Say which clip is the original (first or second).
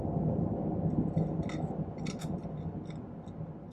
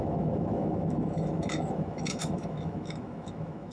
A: first